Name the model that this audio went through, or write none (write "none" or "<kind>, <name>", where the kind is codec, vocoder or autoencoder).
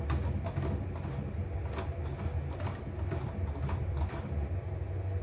none